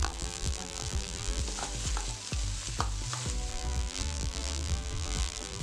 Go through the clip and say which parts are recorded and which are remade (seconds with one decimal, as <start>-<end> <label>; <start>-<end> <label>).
0.0-1.4 remade; 1.4-3.5 recorded; 3.5-5.6 remade